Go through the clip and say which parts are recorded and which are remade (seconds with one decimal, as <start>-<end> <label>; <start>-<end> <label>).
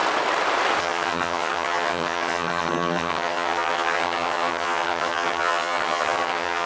0.0-0.8 recorded; 0.8-6.7 remade